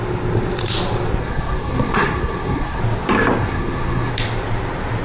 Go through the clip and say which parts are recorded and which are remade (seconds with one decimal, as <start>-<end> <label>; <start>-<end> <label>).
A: 0.0-1.2 recorded; 1.2-2.8 remade; 2.8-3.4 recorded; 3.4-4.1 remade; 4.1-5.0 recorded